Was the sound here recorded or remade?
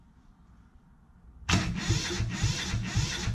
recorded